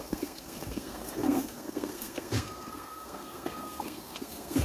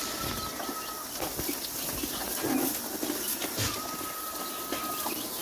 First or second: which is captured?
second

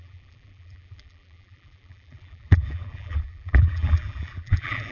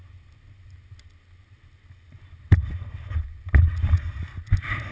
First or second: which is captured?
second